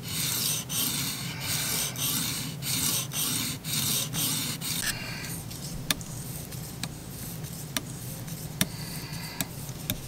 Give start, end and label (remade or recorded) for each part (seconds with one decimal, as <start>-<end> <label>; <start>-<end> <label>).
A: 0.0-0.4 remade; 0.4-4.7 recorded; 4.7-7.0 remade; 7.0-8.0 recorded; 8.0-9.1 remade; 9.1-10.1 recorded